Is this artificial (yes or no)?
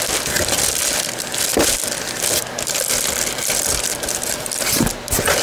no